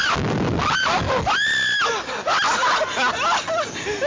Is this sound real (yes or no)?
yes